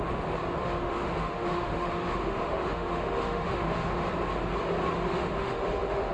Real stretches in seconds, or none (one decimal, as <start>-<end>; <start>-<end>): 0.0-0.6; 4.1-5.1